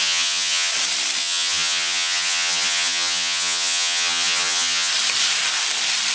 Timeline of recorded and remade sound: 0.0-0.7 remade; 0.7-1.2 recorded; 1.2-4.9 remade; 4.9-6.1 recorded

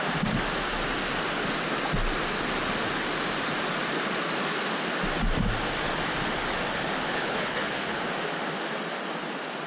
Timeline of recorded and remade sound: 0.0-7.1 recorded; 7.1-8.0 remade; 8.0-9.7 recorded

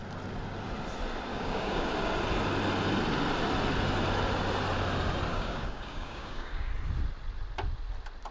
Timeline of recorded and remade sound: 0.0-1.3 recorded; 1.3-1.9 remade; 1.9-5.3 recorded; 5.3-6.7 remade; 6.7-8.3 recorded

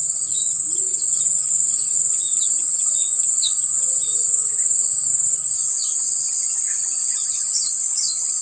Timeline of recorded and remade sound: 0.0-5.1 remade; 5.1-5.7 recorded; 5.7-8.4 remade